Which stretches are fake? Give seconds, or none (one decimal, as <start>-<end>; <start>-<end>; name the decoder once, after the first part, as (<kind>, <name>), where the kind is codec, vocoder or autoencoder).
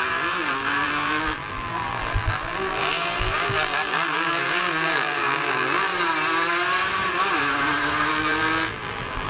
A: 0.0-5.9 (vocoder, BigVGAN v2); 8.1-9.3